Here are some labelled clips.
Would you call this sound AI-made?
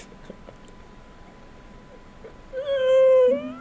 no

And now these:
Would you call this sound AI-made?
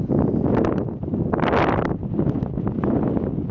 no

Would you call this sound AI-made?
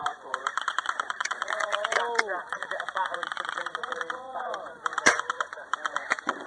yes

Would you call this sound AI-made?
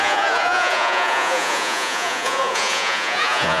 yes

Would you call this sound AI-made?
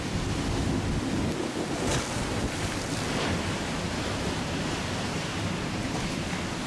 no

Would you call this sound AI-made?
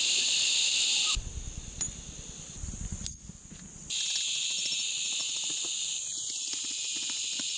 no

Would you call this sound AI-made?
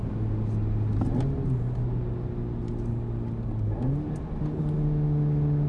no